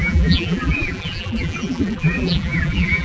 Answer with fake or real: fake